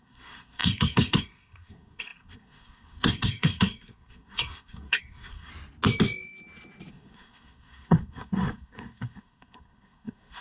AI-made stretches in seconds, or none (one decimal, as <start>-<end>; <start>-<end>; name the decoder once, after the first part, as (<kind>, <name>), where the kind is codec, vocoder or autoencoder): 0.0-5.5 (codec, SNAC); 6.9-10.4